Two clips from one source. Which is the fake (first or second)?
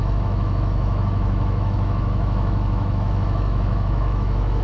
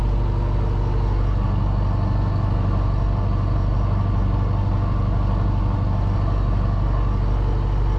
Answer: first